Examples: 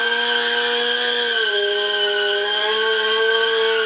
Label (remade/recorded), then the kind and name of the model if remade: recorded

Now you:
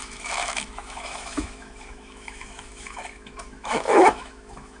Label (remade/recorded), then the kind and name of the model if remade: remade, autoencoder, DAC-VAE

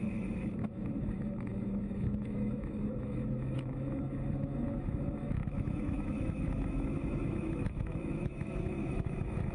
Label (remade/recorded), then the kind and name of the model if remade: remade, autoencoder, DAC-VAE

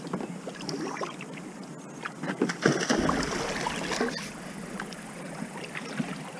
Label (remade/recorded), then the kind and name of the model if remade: recorded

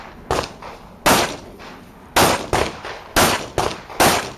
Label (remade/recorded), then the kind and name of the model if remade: recorded